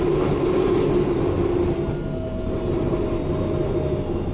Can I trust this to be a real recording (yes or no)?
yes